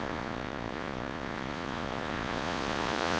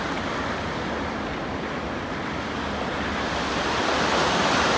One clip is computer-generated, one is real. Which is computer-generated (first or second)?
first